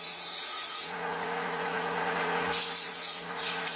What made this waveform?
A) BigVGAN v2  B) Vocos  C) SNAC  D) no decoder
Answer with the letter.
B